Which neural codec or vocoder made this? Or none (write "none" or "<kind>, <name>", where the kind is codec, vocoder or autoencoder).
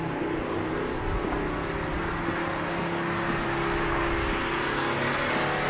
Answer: none